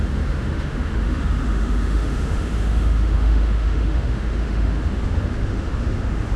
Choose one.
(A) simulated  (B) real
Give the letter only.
A